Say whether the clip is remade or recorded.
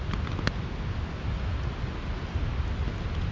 recorded